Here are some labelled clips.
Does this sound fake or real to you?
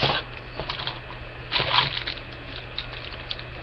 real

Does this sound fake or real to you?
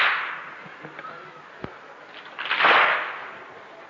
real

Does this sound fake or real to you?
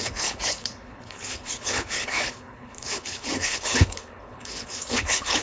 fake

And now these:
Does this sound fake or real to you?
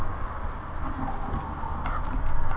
real